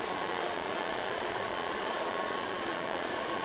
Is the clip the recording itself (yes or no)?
no